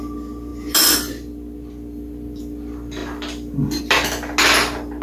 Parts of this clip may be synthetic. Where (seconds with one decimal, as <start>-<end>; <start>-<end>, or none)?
none